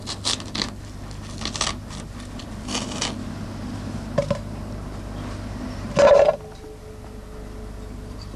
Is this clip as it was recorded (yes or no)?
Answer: yes